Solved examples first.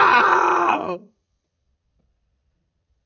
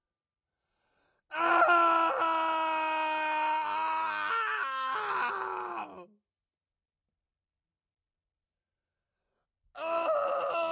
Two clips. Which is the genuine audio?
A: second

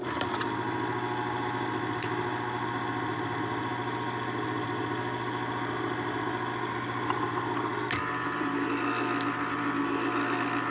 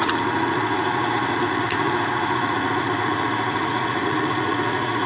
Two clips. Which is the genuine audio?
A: first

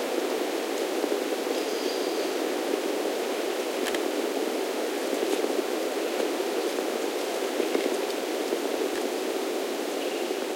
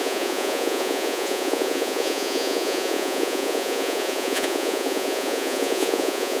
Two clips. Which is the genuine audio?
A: first